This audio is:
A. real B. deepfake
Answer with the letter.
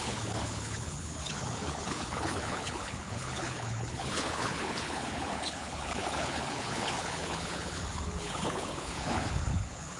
B